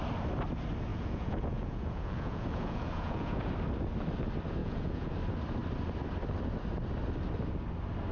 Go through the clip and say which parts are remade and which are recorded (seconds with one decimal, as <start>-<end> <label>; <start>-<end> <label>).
0.0-0.9 recorded; 0.9-3.5 remade; 3.5-4.6 recorded; 4.6-5.1 remade; 5.1-8.1 recorded

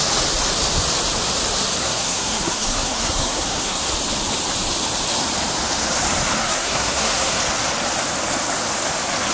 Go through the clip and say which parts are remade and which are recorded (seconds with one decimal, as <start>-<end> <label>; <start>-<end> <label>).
0.0-1.8 recorded; 1.8-3.9 remade; 3.9-6.4 recorded; 6.4-7.4 remade; 7.4-9.3 recorded

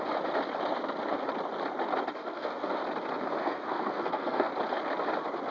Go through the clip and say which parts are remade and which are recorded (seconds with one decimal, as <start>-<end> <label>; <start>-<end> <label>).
0.0-2.2 recorded; 2.2-2.8 remade; 2.8-3.4 recorded; 3.4-4.5 remade; 4.5-5.5 recorded

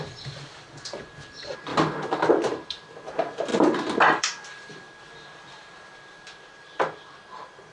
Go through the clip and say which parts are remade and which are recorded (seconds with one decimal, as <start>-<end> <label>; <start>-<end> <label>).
0.0-1.7 remade; 1.7-2.3 recorded; 2.3-3.5 remade; 3.5-4.2 recorded; 4.2-7.7 remade

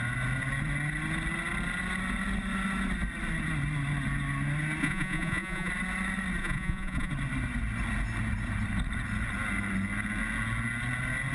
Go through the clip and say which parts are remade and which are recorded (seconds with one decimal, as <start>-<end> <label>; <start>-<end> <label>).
0.0-4.8 recorded; 4.8-5.7 remade; 5.7-6.4 recorded; 6.4-7.1 remade; 7.1-11.3 recorded

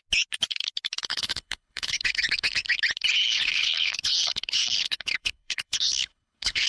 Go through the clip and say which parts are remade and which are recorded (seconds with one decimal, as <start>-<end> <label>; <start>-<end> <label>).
0.0-1.1 recorded; 1.1-2.8 remade; 2.8-3.3 recorded; 3.3-6.7 remade

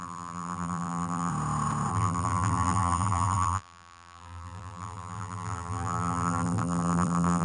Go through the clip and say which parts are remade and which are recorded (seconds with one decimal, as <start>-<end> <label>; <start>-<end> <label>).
0.0-1.3 remade; 1.3-1.9 recorded; 1.9-7.4 remade